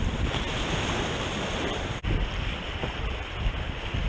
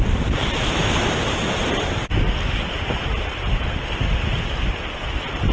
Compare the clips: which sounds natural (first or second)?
second